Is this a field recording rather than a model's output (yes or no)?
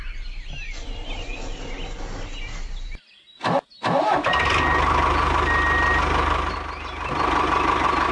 yes